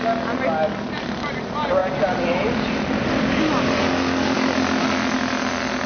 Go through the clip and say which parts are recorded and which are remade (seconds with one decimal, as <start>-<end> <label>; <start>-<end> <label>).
0.0-5.9 recorded